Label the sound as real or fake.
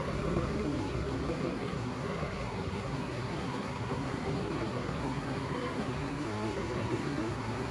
fake